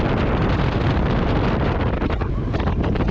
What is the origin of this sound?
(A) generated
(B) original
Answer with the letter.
B